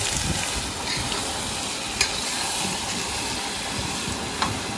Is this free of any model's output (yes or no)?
yes